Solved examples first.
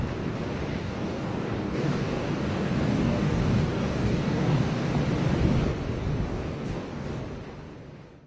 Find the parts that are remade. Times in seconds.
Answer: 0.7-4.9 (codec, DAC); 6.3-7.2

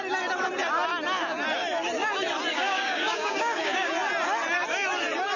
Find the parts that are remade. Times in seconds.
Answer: 2.5-3.9 (codec, DAC)

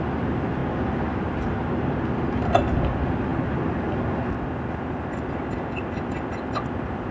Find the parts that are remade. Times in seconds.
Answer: none